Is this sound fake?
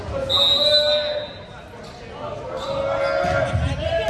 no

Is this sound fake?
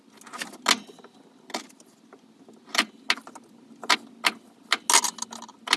no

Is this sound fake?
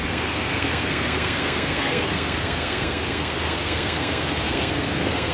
yes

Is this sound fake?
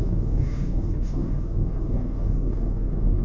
yes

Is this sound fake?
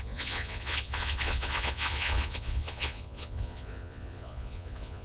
yes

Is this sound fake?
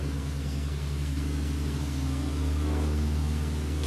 yes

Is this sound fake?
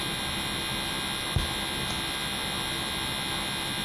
no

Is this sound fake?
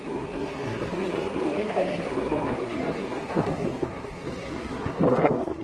yes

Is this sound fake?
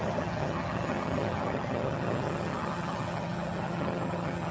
yes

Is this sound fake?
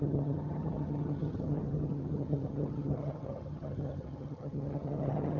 yes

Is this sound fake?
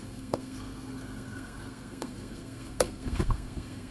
yes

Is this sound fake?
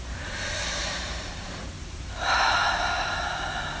yes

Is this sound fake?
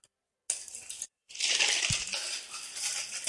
no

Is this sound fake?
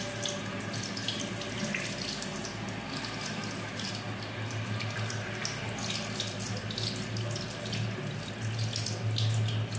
no